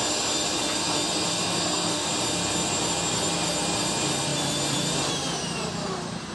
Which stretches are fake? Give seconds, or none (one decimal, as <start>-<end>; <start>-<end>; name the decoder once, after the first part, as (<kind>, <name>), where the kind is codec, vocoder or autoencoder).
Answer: 1.5-2.1 (codec, SNAC)

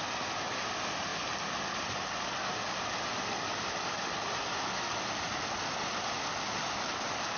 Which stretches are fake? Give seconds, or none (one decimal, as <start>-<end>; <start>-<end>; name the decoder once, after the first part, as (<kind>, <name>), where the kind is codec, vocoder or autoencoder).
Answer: none

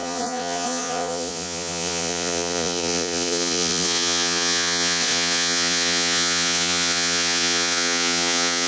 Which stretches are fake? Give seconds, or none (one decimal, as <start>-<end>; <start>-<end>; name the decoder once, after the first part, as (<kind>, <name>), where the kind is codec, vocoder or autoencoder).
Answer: 0.0-8.7 (vocoder, Vocos)

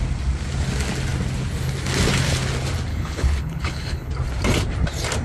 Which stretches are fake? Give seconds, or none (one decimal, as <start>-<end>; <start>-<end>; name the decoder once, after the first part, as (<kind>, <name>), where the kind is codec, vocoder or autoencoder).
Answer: 2.9-4.1 (codec, HILCodec)

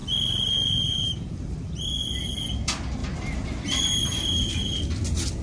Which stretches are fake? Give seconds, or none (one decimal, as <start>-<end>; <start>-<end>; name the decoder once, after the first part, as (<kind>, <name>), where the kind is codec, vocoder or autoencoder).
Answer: 0.0-1.5 (vocoder, BigVGAN v2); 3.0-3.8

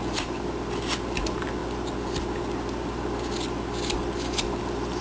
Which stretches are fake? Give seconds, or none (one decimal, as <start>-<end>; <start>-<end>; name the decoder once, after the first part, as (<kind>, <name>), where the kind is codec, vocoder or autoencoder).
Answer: none

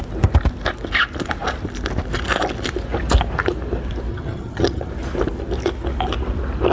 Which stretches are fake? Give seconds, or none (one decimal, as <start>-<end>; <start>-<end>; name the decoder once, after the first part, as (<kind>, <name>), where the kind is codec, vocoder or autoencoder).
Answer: 4.1-4.9 (vocoder, HiFi-GAN)